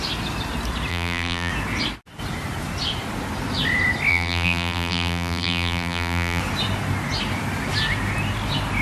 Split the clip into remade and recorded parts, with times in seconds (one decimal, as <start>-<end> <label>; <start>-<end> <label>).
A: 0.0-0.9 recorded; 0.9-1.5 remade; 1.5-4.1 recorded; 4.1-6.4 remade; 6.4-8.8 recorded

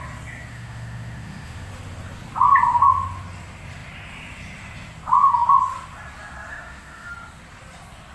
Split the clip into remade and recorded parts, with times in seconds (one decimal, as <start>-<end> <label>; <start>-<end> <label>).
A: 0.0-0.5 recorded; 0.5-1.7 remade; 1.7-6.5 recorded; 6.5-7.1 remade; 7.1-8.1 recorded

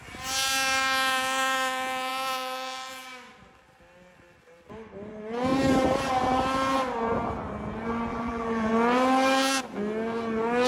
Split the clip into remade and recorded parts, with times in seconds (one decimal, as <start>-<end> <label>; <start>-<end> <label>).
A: 0.0-8.1 recorded; 8.1-8.7 remade; 8.7-10.7 recorded

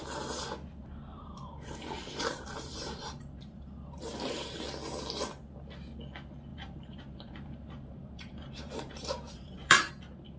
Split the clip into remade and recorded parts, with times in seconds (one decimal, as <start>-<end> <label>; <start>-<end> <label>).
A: 0.0-1.1 recorded; 1.1-4.6 remade; 4.6-6.5 recorded; 6.5-9.9 remade; 9.9-10.4 recorded